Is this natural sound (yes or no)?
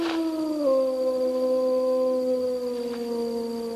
yes